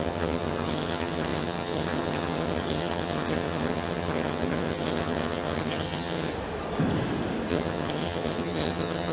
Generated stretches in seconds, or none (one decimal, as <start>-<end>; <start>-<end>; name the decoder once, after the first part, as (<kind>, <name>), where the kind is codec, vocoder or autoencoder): 0.0-6.3 (vocoder, HiFi-GAN); 7.5-9.1